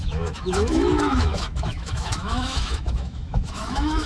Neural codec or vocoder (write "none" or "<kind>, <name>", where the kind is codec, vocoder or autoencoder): autoencoder, DAC-VAE